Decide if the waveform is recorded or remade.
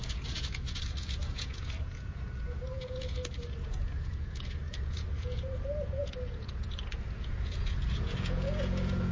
remade